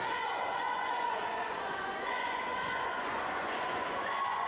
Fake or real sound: fake